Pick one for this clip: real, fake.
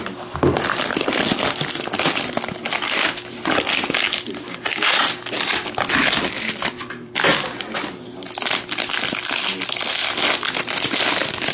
real